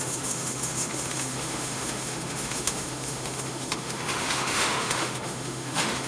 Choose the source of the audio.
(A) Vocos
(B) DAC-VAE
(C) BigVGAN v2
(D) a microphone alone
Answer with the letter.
B